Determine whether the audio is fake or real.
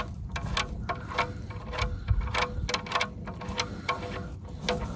real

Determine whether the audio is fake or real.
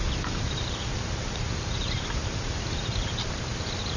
fake